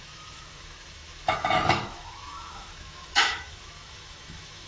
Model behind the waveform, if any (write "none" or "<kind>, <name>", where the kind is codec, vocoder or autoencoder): autoencoder, DAC-VAE